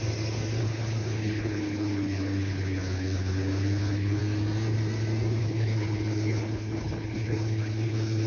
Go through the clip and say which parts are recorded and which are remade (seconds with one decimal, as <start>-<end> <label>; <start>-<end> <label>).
0.0-0.6 recorded; 0.6-4.2 remade; 4.2-5.4 recorded; 5.4-8.3 remade